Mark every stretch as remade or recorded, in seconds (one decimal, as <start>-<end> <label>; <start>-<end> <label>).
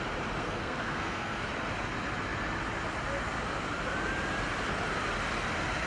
0.0-0.4 recorded; 0.4-1.5 remade; 1.5-5.9 recorded